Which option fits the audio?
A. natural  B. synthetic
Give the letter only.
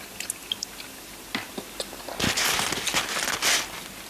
A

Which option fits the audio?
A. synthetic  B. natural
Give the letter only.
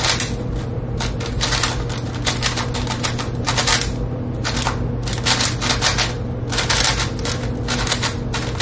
B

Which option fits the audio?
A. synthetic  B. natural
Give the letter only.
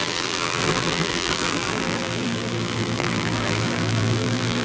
A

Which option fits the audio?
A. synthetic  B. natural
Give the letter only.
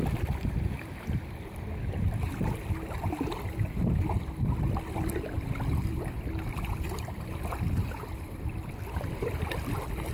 A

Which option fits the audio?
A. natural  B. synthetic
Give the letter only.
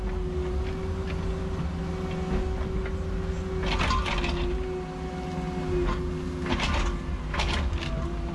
A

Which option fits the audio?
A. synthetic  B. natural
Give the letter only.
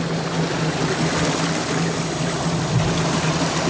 B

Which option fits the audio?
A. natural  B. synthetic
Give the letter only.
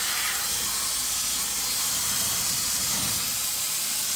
A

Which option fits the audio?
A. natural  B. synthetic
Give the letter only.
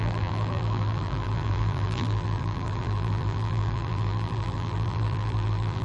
B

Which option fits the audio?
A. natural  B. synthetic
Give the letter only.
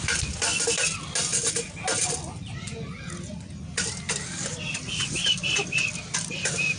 A